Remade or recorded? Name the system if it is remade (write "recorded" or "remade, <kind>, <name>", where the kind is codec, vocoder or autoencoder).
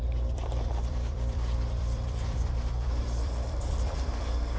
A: remade, vocoder, BigVGAN v2